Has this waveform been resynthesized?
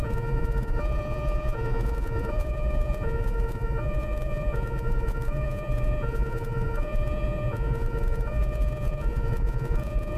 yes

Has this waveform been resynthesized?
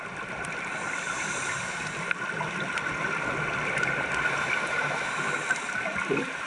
no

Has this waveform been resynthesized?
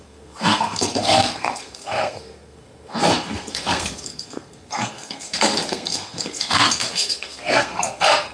yes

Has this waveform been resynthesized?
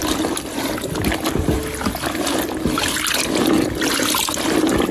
no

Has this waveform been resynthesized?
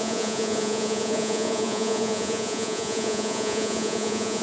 yes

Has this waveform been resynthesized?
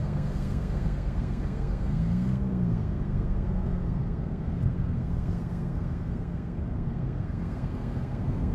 yes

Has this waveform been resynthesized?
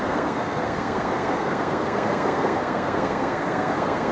yes